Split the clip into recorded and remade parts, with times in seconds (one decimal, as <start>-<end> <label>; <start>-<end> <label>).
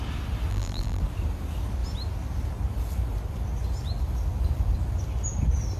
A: 0.0-0.5 recorded; 0.5-1.0 remade; 1.0-5.8 recorded